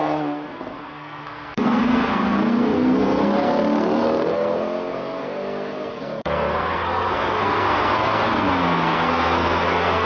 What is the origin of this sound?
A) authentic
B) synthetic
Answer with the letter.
B